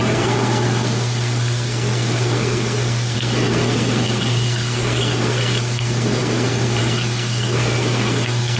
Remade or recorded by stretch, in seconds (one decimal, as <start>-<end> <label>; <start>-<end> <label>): 0.0-8.6 remade